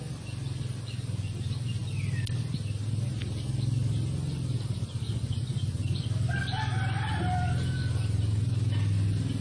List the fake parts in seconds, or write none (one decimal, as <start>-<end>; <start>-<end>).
none